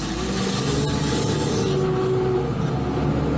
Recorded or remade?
recorded